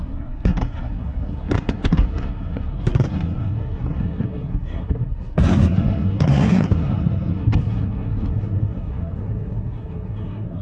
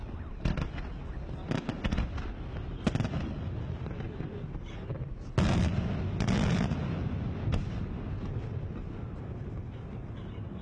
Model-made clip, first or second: first